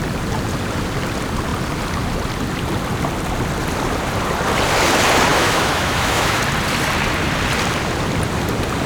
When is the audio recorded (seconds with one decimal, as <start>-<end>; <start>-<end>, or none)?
0.0-5.3; 6.4-8.9